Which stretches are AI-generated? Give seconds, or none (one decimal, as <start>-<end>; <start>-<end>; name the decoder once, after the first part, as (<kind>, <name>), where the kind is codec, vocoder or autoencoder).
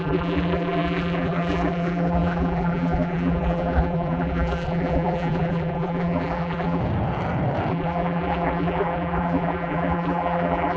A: 0.0-6.8 (vocoder, BigVGAN v2); 7.7-10.8